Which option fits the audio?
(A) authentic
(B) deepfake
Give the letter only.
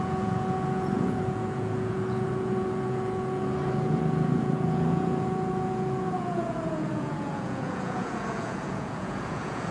B